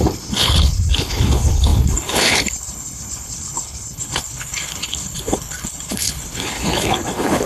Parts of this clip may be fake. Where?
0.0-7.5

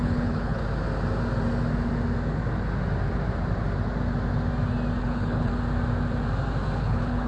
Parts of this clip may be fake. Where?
0.0-0.6; 5.0-5.5; 6.8-7.3

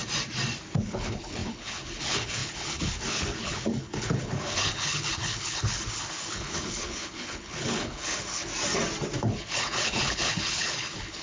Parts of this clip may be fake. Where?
0.8-8.5; 9.2-11.2